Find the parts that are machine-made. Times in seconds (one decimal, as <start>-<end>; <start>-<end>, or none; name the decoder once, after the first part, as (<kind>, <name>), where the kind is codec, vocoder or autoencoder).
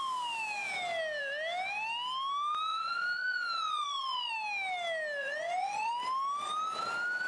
2.7-4.3 (vocoder, Vocos); 5.2-5.9